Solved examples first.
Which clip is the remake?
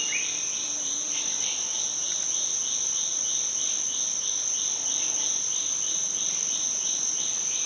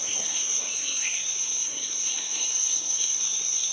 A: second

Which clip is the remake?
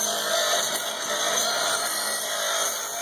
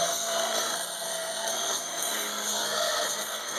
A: second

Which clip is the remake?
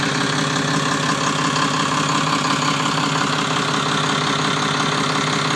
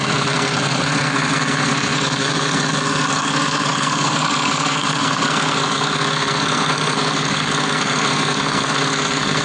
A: second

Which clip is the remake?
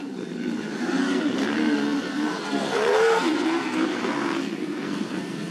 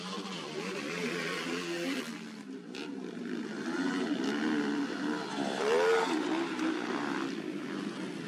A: first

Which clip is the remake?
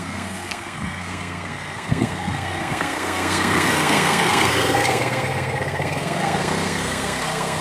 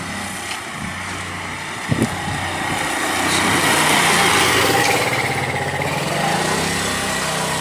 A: first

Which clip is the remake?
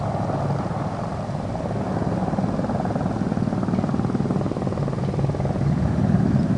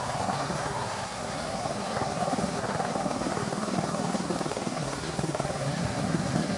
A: second